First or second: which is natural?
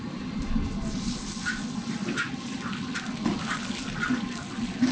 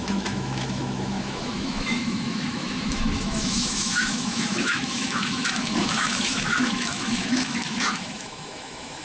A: first